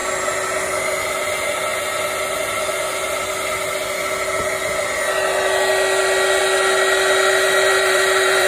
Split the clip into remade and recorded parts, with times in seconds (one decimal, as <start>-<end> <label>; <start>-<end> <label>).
0.0-7.7 recorded; 7.7-8.5 remade